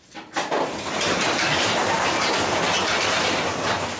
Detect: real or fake real